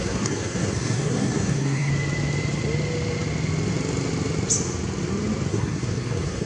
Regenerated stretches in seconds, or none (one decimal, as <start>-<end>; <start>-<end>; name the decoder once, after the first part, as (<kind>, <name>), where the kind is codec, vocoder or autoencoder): 0.0-1.9 (codec, SNAC); 5.5-6.5